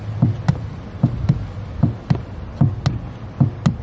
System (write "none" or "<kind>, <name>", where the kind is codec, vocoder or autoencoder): none